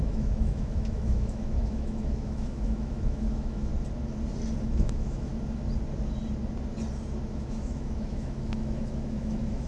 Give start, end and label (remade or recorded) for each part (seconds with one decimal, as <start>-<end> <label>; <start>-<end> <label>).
0.0-3.7 remade; 3.7-4.6 recorded; 4.6-5.3 remade; 5.3-7.3 recorded; 7.3-9.7 remade